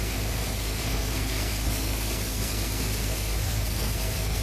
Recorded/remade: remade